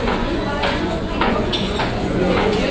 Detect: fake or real fake